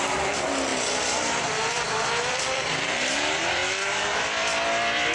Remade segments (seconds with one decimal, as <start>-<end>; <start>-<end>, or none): 0.0-3.6